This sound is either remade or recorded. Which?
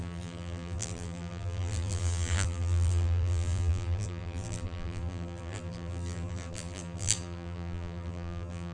remade